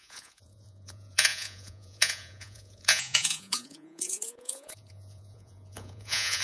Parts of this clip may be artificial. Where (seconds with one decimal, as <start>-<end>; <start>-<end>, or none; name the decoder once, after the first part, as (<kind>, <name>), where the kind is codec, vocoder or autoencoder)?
0.0-6.4 (vocoder, Vocos)